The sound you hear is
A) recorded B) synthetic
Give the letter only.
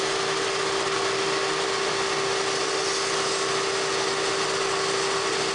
A